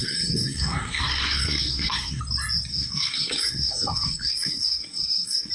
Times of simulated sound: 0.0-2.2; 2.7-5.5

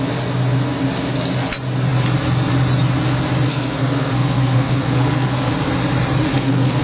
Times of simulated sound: 3.5-5.5; 6.3-6.8

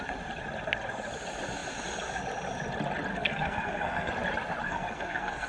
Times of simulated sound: 3.1-4.1; 4.6-5.5

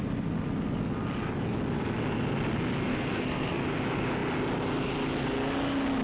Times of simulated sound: 2.9-3.6

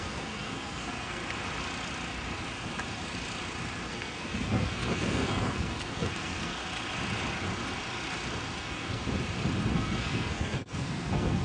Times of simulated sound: 0.0-1.2; 3.9-6.6; 8.6-9.0; 9.7-11.4

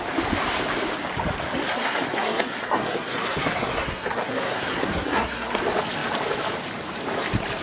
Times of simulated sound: 1.7-5.6